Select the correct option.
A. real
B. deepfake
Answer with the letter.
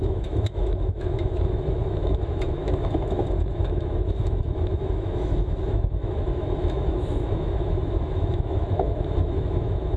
B